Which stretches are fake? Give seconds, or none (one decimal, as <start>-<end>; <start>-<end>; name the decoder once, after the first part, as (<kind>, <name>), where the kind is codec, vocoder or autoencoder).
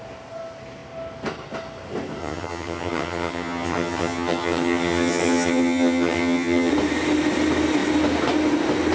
2.2-6.7 (vocoder, HiFi-GAN)